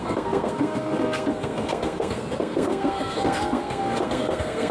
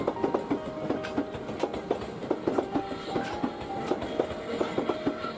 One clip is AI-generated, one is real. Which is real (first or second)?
second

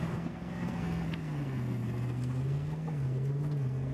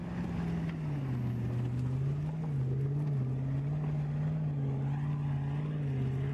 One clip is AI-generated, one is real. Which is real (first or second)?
second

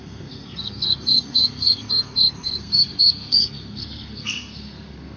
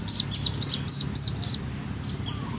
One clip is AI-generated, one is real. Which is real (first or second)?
second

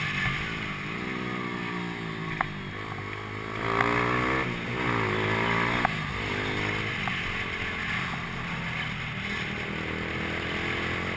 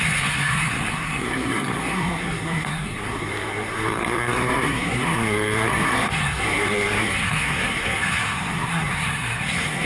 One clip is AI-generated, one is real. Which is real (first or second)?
first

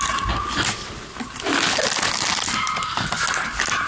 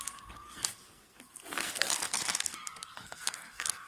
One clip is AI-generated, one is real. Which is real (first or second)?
first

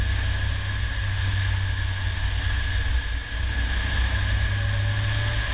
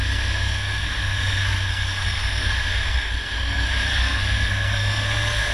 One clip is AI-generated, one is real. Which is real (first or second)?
first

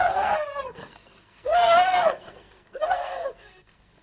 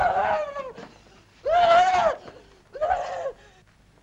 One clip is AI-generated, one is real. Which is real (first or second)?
second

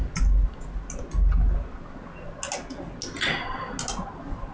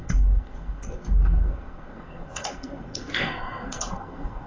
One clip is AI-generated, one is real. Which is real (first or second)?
first